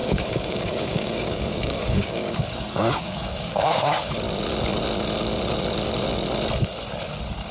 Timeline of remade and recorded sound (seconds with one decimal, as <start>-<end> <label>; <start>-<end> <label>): 0.0-4.1 remade; 4.1-7.5 recorded